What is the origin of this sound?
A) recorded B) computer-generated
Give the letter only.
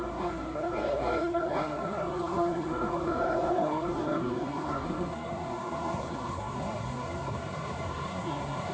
B